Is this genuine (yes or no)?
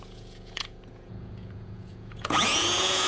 no